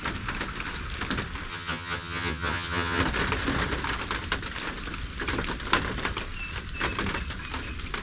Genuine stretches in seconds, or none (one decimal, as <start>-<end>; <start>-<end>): 0.0-1.5; 3.0-8.0

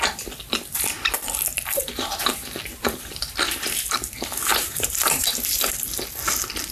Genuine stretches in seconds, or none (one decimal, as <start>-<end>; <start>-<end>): 0.0-1.5; 2.3-4.5; 5.5-6.7

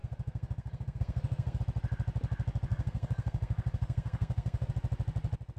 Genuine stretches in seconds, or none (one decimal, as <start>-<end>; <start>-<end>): 1.6-2.7; 4.7-5.6